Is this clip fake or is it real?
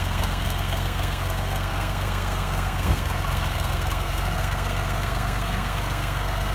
fake